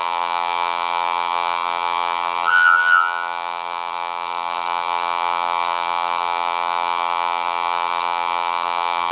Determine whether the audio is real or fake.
fake